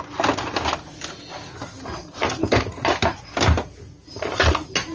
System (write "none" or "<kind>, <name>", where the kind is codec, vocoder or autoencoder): none